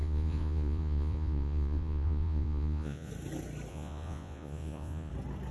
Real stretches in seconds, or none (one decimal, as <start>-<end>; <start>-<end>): 3.1-3.7; 5.1-5.5